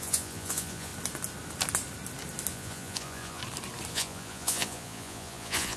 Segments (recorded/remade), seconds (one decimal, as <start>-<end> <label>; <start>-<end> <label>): 0.0-0.9 remade; 0.9-2.5 recorded; 2.5-3.4 remade; 3.4-3.9 recorded; 3.9-5.8 remade